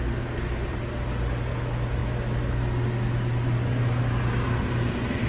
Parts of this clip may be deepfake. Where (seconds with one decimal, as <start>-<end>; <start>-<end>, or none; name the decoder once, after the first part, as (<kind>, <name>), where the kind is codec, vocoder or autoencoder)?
none